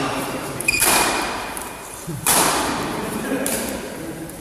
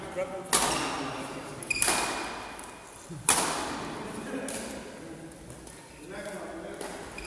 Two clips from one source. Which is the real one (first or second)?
second